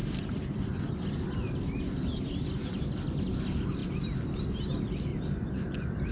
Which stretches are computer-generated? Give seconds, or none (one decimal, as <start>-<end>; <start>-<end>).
5.1-6.1